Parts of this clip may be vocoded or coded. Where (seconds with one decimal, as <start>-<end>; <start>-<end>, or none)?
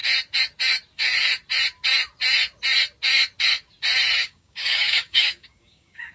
4.2-6.1